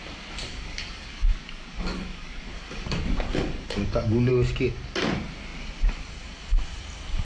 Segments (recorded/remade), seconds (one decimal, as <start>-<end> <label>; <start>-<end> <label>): 0.0-0.5 recorded; 0.5-4.3 remade; 4.3-7.2 recorded